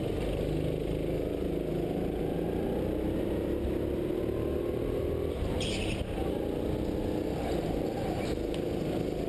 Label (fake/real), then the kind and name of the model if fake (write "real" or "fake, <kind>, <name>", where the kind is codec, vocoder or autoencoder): real